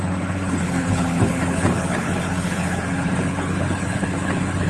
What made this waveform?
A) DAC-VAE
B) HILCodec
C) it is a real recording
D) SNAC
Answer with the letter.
B